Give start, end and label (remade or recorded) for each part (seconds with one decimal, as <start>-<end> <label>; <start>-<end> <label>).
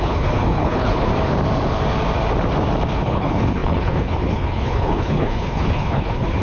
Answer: 0.0-1.1 remade; 1.1-2.9 recorded; 2.9-6.4 remade